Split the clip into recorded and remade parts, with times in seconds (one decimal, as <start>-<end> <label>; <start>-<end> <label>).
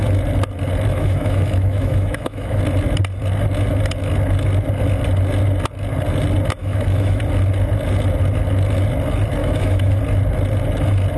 0.0-0.9 recorded; 0.9-2.6 remade; 2.6-6.6 recorded; 6.6-7.2 remade; 7.2-9.4 recorded; 9.4-10.0 remade; 10.0-11.2 recorded